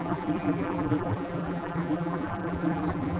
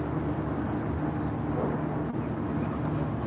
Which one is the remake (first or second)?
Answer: first